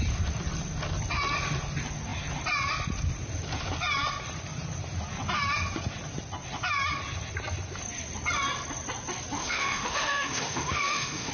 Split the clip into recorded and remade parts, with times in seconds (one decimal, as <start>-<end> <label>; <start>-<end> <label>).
0.0-9.4 recorded; 9.4-11.3 remade

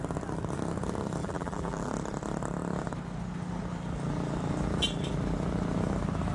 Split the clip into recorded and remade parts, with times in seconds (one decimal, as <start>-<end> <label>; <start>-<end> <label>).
0.0-1.2 recorded; 1.2-1.9 remade; 1.9-6.3 recorded

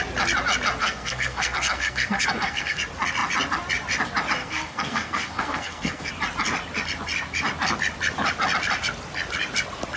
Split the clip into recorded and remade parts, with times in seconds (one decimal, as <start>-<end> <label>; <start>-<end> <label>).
0.0-0.8 recorded; 0.8-2.8 remade; 2.8-4.4 recorded; 4.4-6.1 remade; 6.1-10.0 recorded